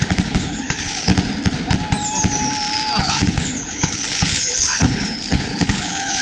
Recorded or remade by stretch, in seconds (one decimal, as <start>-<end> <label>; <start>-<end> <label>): 0.0-1.1 remade; 1.1-3.0 recorded; 3.0-6.2 remade